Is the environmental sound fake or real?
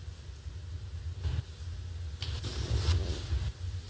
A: real